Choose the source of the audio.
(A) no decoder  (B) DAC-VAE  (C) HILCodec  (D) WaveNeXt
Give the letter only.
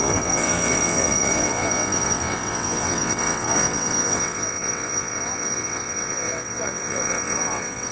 D